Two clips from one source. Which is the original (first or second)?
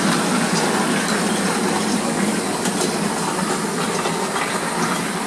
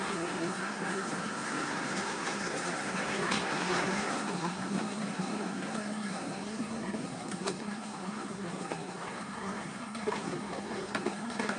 first